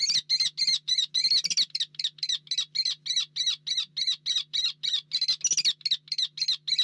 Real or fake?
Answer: real